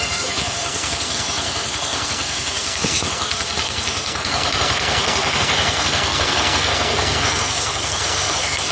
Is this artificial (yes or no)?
yes